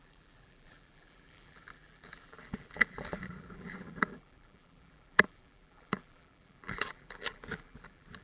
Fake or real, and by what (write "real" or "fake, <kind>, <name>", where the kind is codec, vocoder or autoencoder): fake, vocoder, BigVGAN v2